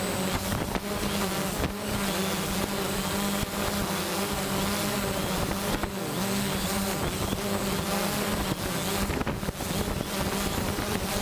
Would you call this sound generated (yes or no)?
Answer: no